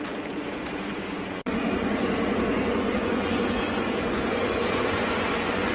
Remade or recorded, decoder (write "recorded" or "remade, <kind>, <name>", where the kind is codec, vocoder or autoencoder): remade, vocoder, Vocos